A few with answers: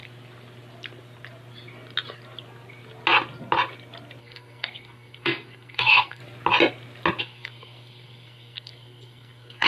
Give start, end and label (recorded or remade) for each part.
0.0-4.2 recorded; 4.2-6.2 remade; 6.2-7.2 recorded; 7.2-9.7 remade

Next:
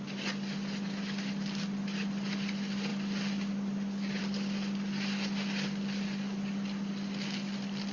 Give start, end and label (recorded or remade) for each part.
0.0-7.9 recorded

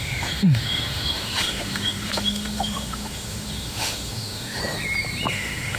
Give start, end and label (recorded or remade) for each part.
0.0-4.6 remade; 4.6-5.3 recorded; 5.3-5.8 remade

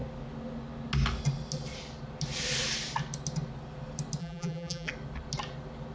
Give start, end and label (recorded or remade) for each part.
0.0-4.2 recorded; 4.2-4.9 remade; 4.9-5.9 recorded